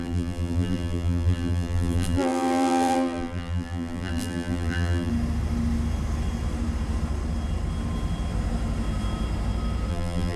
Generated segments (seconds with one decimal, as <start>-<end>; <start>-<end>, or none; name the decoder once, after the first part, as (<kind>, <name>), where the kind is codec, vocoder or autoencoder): 0.0-5.1 (vocoder, BigVGAN v2); 9.9-10.4